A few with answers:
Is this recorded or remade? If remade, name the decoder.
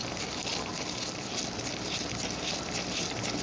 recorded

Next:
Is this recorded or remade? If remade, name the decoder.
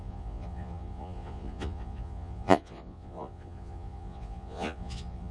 remade, vocoder, Vocos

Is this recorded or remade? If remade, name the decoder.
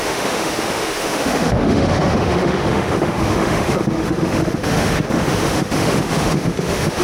remade, autoencoder, DAC-VAE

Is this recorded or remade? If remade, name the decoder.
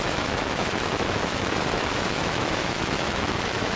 remade, autoencoder, DAC-VAE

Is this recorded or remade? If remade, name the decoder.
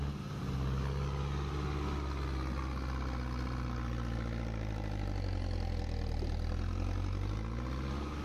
recorded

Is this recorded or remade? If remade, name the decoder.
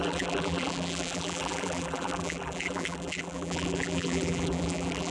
remade, vocoder, BigVGAN v2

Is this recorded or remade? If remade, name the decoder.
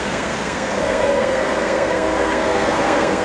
remade, codec, SNAC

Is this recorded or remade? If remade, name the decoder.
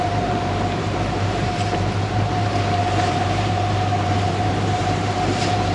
remade, vocoder, BigVGAN v2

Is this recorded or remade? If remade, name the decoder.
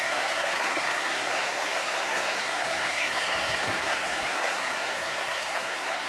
remade, codec, SNAC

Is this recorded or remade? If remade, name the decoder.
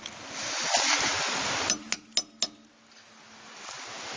recorded